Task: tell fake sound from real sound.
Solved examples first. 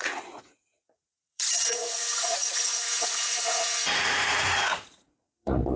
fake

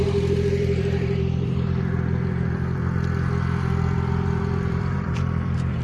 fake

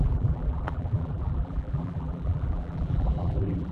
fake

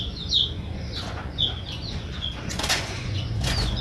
fake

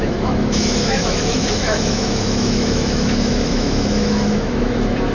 fake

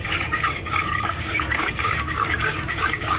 fake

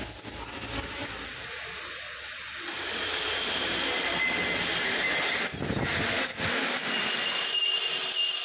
real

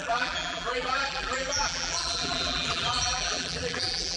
fake